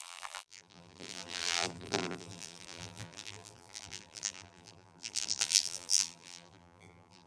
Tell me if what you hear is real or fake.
fake